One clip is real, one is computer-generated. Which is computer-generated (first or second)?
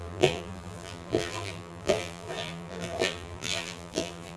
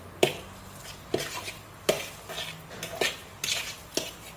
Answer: first